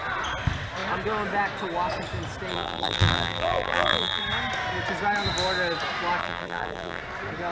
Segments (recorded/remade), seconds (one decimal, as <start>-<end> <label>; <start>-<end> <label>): 0.0-2.5 recorded; 2.5-4.2 remade; 4.2-6.2 recorded; 6.2-7.0 remade; 7.0-7.5 recorded